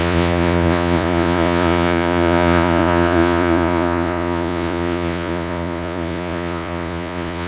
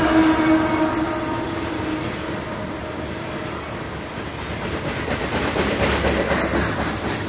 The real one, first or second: second